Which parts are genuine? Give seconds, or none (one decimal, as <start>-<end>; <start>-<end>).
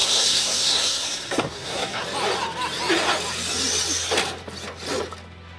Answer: 2.0-5.6